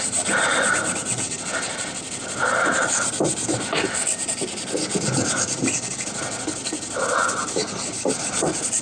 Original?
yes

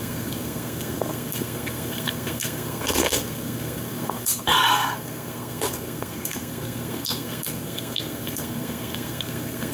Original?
no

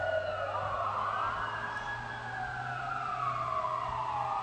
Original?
yes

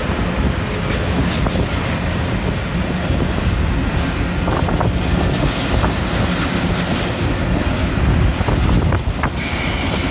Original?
yes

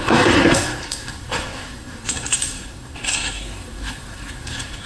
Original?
no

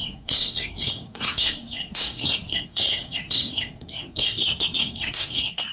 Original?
no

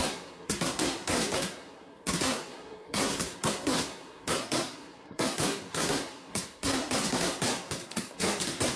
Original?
no